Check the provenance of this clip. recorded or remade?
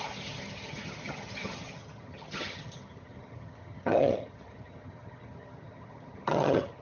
remade